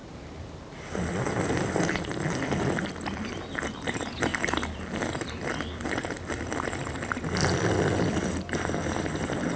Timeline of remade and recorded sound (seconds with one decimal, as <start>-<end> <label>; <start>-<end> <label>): 0.0-3.3 recorded; 3.3-4.3 remade; 4.3-9.0 recorded; 9.0-9.6 remade